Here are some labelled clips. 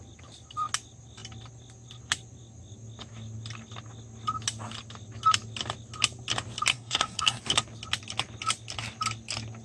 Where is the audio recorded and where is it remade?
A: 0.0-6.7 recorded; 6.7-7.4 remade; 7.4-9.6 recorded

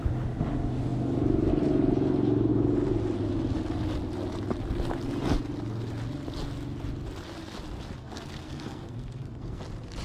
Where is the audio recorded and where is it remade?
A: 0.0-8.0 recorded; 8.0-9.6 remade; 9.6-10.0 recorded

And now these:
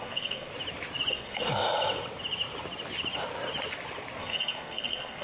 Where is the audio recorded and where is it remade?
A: 0.0-0.5 remade; 0.5-1.1 recorded; 1.1-1.6 remade; 1.6-4.2 recorded; 4.2-5.2 remade